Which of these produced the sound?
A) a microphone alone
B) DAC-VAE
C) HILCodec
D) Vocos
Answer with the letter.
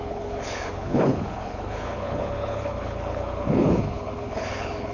C